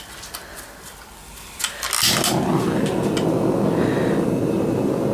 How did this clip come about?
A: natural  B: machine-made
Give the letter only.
A